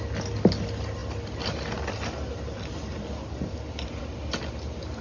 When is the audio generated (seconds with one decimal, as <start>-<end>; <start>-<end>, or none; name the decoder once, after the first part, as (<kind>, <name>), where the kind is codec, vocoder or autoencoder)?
none